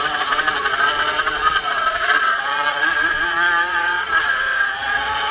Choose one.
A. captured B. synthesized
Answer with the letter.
B